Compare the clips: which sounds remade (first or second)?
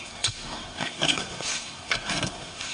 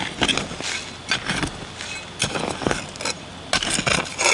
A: first